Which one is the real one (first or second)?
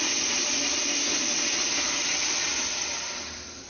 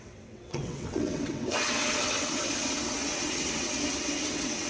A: first